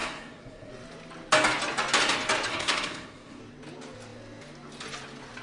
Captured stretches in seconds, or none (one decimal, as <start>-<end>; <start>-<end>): 0.7-2.5; 3.4-5.4